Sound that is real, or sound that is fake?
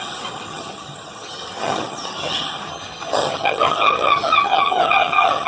fake